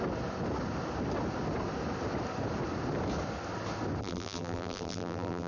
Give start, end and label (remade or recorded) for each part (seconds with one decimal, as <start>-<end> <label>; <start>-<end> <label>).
0.0-4.0 recorded; 4.0-5.5 remade

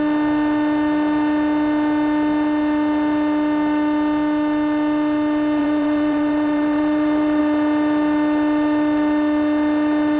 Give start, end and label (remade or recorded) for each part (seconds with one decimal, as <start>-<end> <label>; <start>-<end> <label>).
0.0-5.6 recorded; 5.6-7.4 remade; 7.4-10.2 recorded

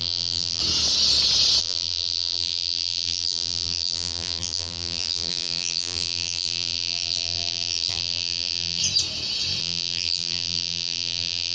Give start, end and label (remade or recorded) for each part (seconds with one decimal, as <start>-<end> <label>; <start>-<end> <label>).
0.0-0.6 remade; 0.6-1.6 recorded; 1.6-8.8 remade; 8.8-9.6 recorded; 9.6-11.5 remade

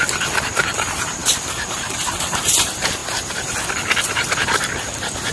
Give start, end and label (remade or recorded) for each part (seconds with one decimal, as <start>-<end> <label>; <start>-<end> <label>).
0.0-3.0 remade; 3.0-4.0 recorded; 4.0-4.4 remade; 4.4-5.3 recorded

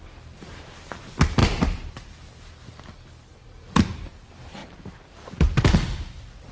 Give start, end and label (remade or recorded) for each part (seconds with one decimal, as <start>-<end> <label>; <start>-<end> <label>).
0.0-1.4 recorded; 1.4-1.9 remade; 1.9-3.4 recorded; 3.4-4.1 remade; 4.1-4.6 recorded; 4.6-5.3 remade; 5.3-6.5 recorded

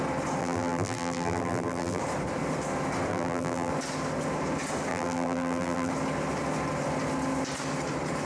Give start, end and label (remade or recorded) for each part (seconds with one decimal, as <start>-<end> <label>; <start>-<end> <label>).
0.0-0.4 recorded; 0.4-2.0 remade; 2.0-3.1 recorded; 3.1-3.7 remade; 3.7-4.9 recorded; 4.9-5.9 remade; 5.9-8.3 recorded

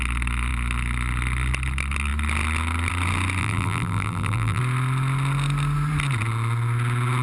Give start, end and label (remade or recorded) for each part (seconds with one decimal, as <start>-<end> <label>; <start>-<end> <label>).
0.0-3.4 recorded; 3.4-4.6 remade; 4.6-7.2 recorded